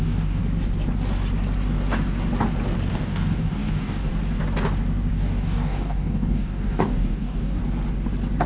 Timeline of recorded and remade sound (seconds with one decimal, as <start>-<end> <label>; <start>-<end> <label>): 0.0-0.4 remade; 0.4-2.9 recorded; 2.9-4.1 remade; 4.1-5.1 recorded; 5.1-7.6 remade; 7.6-8.5 recorded